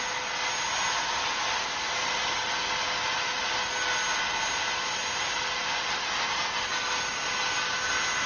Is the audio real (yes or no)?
yes